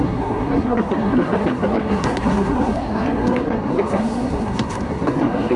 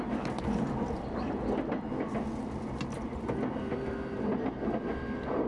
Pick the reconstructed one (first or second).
first